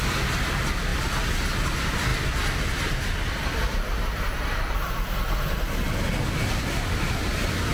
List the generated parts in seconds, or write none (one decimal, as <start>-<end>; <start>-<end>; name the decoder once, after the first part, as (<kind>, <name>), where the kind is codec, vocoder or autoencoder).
none